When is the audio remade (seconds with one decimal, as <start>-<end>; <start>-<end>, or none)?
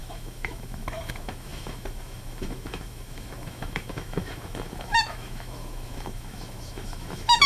0.0-7.5